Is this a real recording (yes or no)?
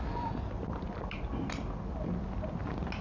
yes